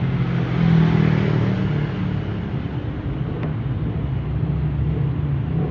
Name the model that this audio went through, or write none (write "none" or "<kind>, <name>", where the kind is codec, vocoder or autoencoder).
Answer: none